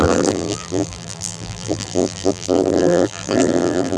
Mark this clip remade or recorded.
remade